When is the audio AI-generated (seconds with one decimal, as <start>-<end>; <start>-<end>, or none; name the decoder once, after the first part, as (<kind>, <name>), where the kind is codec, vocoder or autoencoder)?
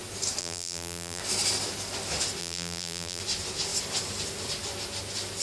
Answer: 0.4-1.2 (vocoder, BigVGAN v2); 2.4-3.2